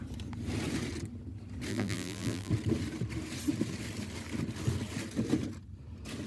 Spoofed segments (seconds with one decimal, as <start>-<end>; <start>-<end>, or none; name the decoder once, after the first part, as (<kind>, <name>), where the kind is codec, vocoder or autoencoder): 1.7-2.5 (vocoder, BigVGAN v2)